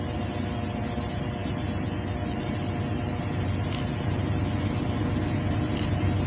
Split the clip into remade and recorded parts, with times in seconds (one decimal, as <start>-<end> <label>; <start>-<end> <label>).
0.0-6.3 recorded